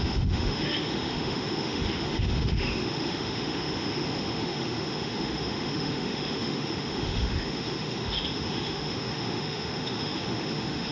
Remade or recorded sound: remade